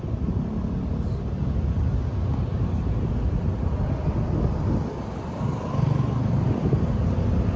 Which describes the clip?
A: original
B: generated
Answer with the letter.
A